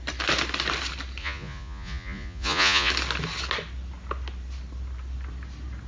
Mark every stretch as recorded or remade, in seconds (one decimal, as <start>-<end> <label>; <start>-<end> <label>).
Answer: 0.0-1.2 recorded; 1.2-2.9 remade; 2.9-5.9 recorded